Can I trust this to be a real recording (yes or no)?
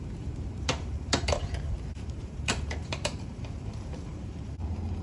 no